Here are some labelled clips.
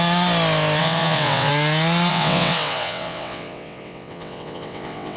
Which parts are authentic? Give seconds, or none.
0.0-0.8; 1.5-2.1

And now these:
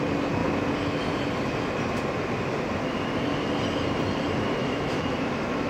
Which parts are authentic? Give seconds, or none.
0.0-4.6

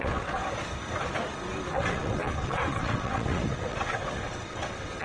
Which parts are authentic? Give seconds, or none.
0.4-1.7

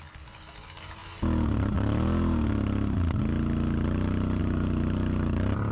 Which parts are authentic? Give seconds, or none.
0.0-5.7

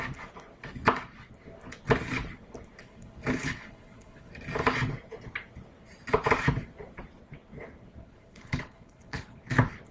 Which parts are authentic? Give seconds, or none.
0.0-2.8; 4.3-8.0; 9.4-9.9

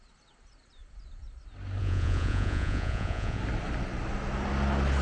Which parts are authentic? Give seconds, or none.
0.0-1.8; 3.4-5.0

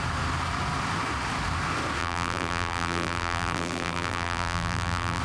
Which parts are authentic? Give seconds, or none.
0.0-2.0

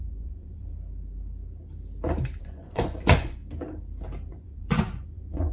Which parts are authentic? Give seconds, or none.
0.7-2.4; 3.4-4.3